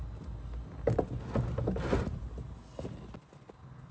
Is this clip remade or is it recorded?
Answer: recorded